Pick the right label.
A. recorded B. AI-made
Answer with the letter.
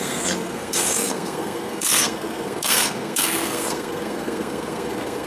B